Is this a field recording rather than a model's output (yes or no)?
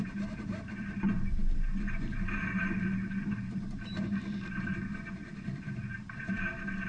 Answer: no